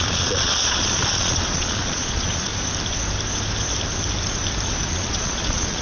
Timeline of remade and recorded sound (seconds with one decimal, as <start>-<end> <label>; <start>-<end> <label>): 0.0-2.5 remade; 2.5-4.9 recorded; 4.9-5.8 remade